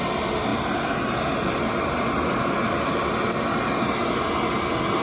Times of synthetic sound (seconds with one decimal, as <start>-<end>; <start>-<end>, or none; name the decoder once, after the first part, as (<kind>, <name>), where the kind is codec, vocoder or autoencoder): 0.5-3.3 (vocoder, BigVGAN v2)